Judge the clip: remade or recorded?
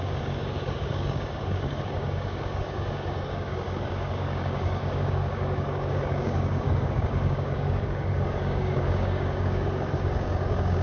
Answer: remade